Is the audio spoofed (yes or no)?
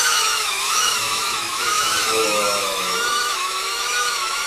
yes